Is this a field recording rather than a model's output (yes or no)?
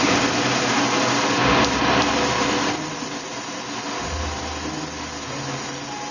yes